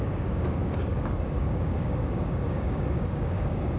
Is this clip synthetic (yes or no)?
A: yes